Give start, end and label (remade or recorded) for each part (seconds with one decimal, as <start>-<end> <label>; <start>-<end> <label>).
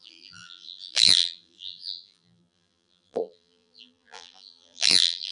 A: 0.0-5.3 remade